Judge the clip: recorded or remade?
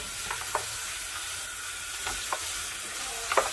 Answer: recorded